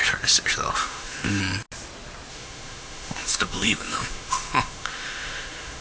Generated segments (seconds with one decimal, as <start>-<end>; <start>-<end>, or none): 0.8-1.4; 2.3-5.8